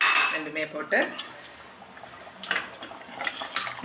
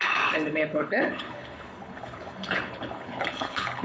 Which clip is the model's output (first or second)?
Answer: second